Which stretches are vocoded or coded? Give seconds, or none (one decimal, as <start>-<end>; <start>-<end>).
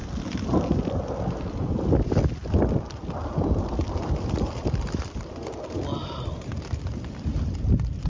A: 6.0-6.5; 7.3-8.1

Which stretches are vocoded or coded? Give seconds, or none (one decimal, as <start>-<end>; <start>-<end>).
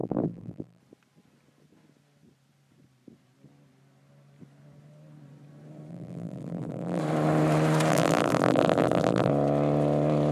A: 0.0-0.8; 5.9-7.0; 7.9-9.3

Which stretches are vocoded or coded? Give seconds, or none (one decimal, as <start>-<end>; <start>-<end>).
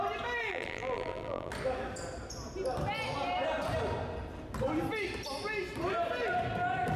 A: 0.5-1.5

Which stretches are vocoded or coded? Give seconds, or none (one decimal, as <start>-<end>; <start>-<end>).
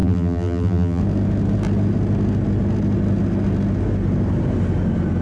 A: 0.0-1.0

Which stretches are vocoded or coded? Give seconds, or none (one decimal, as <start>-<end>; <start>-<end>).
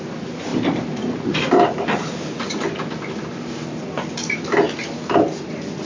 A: none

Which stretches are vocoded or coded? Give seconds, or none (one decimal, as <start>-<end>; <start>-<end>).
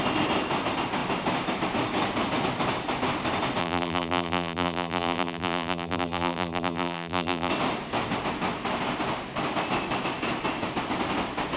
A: 3.6-7.5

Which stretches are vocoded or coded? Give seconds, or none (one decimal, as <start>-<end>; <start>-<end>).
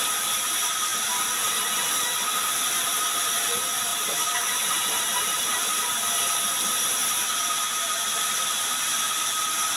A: 3.9-6.1